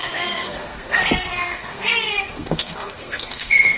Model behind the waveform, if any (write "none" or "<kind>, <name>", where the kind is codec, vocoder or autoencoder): codec, SNAC